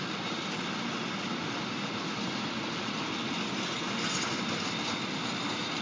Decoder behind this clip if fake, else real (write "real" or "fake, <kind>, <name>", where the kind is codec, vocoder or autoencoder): real